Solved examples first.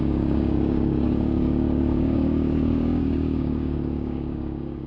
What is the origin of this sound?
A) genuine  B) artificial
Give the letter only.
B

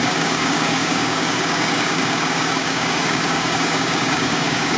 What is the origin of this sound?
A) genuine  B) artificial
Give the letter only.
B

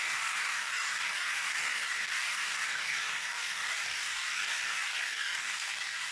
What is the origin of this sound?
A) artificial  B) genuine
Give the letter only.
A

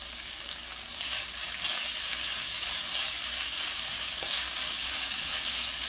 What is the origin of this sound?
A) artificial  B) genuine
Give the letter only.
A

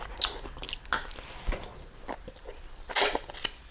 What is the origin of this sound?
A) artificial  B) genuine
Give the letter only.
B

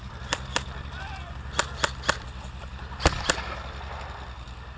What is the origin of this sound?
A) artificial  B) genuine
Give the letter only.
B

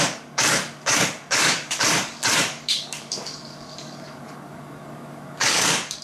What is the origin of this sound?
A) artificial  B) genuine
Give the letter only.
A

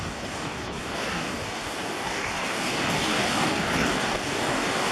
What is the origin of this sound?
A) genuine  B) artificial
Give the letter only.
B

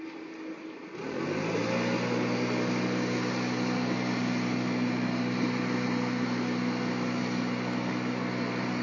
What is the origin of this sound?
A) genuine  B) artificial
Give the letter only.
A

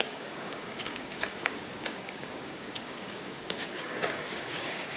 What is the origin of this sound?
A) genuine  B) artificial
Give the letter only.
B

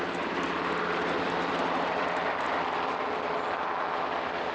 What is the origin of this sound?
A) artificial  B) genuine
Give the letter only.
B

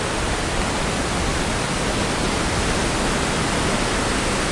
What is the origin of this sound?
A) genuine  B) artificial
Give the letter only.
A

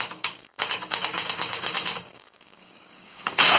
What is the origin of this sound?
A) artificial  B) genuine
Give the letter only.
A